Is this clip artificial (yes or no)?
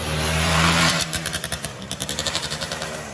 yes